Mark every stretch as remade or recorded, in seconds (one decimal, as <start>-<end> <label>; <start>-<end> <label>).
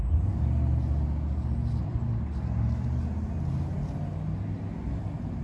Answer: 0.0-1.8 recorded; 1.8-2.3 remade; 2.3-5.4 recorded